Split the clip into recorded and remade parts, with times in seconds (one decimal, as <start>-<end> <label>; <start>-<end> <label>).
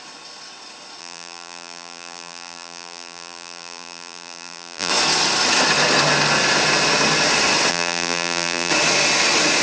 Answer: 0.0-1.0 recorded; 1.0-4.9 remade; 4.9-7.7 recorded; 7.7-8.7 remade; 8.7-9.6 recorded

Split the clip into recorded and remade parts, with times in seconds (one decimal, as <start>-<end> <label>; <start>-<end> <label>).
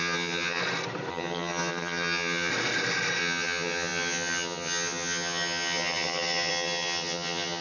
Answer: 0.0-0.6 remade; 0.6-1.1 recorded; 1.1-2.5 remade; 2.5-3.2 recorded; 3.2-7.6 remade